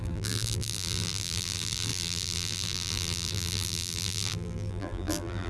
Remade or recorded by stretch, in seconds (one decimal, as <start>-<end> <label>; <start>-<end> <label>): 0.0-5.5 remade